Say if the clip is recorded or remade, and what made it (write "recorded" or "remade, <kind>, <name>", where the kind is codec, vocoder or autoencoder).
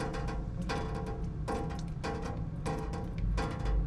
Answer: recorded